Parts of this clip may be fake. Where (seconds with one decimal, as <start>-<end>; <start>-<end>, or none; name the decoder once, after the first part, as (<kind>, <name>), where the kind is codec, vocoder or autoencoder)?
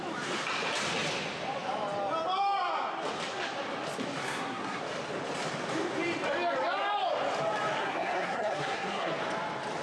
4.2-4.8 (codec, SNAC); 7.8-9.1